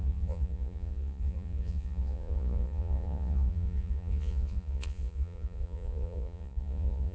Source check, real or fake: fake